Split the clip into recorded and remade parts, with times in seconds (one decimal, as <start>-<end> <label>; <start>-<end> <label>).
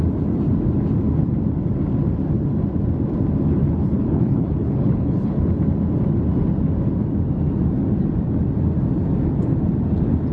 0.0-3.6 recorded; 3.6-5.5 remade; 5.5-10.3 recorded